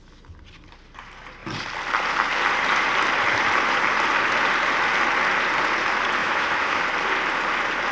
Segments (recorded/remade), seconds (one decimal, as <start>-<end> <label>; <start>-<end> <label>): 0.0-6.2 recorded; 6.2-6.8 remade; 6.8-7.9 recorded